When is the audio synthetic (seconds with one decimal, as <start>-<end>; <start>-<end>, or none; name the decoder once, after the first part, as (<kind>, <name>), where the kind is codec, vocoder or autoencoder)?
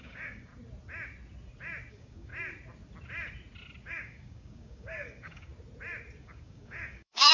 0.0-0.5 (codec, DAC); 1.9-2.3; 3.9-5.5; 6.2-7.3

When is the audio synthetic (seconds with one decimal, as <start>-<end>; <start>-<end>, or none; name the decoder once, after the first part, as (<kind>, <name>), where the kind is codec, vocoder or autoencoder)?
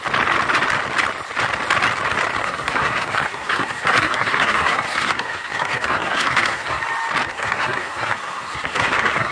2.4-6.8 (codec, SNAC); 7.3-9.3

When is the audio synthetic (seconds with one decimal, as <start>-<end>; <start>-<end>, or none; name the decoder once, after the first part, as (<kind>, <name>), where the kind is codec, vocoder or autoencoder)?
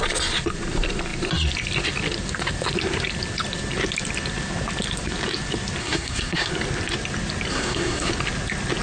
5.8-6.5 (codec, SNAC); 7.5-8.1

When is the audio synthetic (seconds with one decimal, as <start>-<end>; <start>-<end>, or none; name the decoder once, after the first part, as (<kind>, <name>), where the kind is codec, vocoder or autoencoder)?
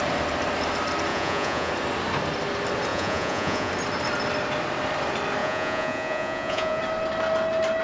1.1-1.7 (vocoder, Vocos); 2.9-3.7; 5.4-6.8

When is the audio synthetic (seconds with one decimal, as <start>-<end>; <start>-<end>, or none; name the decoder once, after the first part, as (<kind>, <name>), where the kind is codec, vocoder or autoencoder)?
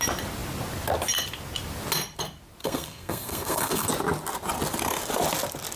2.6-3.9 (codec, SNAC)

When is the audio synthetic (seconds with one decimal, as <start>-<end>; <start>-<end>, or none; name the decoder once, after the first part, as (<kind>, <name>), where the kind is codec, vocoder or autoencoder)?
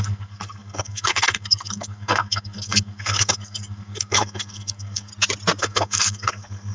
0.0-5.1 (codec, SNAC); 5.6-6.7